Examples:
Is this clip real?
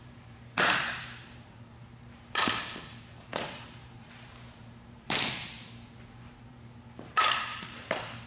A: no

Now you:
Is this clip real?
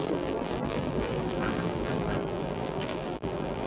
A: no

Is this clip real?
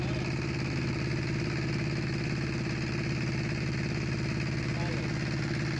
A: yes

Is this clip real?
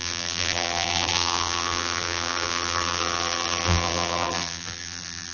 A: no